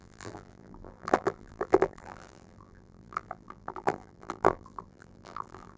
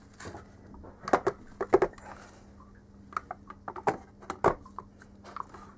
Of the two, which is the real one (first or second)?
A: second